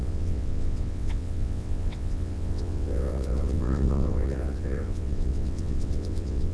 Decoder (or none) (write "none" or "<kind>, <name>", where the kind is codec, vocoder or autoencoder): vocoder, WaveNeXt